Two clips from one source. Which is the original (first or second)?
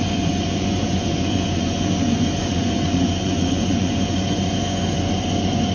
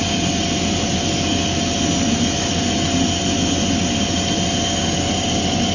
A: second